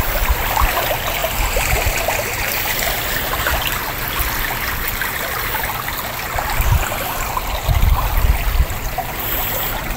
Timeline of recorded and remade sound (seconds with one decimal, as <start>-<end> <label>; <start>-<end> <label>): 0.0-10.0 recorded